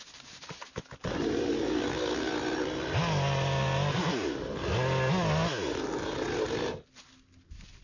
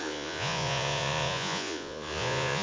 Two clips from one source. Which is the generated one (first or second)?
second